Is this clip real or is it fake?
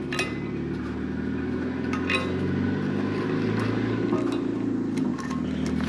real